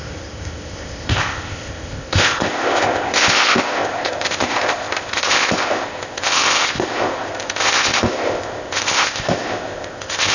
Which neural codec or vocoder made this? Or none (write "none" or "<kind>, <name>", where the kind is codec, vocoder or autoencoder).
codec, ZipCodec